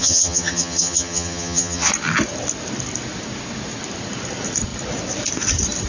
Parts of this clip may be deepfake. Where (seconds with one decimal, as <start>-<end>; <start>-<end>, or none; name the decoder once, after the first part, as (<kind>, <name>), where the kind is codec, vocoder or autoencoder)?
0.0-1.9 (vocoder, HiFi-GAN)